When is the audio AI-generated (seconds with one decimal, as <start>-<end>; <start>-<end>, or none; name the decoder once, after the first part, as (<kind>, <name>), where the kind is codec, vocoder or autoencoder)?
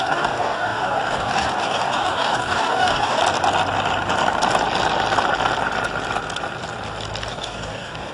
0.0-3.2 (codec, DAC); 7.3-8.1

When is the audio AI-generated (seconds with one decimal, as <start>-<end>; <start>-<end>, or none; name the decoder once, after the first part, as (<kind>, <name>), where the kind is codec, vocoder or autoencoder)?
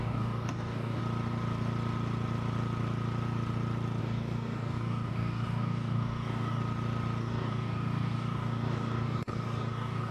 0.0-1.0 (codec, DAC); 4.0-6.6; 7.2-10.1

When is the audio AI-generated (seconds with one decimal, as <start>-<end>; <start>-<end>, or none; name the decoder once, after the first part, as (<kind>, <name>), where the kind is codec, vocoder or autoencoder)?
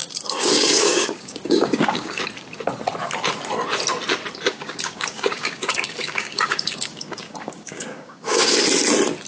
0.0-2.2 (codec, DAC); 4.5-8.5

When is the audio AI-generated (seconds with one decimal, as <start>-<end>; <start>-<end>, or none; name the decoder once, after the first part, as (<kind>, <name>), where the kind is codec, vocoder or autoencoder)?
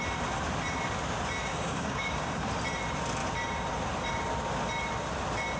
1.5-2.4 (codec, DAC)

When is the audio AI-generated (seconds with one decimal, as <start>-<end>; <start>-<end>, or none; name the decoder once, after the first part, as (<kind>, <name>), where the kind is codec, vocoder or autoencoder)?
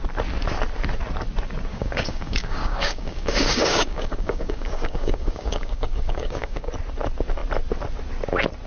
1.7-6.7 (codec, DAC)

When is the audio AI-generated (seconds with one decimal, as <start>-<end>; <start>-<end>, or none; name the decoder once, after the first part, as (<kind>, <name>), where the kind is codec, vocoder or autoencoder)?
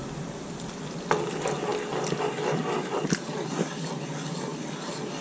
none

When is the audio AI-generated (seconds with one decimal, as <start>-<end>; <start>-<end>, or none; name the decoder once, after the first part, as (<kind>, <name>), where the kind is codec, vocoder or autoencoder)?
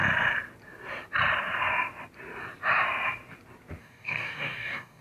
3.8-5.0 (codec, DAC)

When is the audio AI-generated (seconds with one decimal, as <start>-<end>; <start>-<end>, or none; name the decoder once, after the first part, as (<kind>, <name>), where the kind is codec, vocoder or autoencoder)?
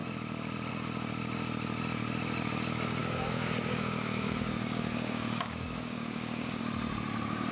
3.0-6.6 (codec, DAC)